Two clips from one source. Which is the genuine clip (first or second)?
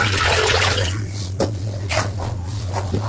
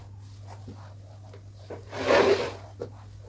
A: second